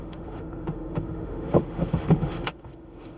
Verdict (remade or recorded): remade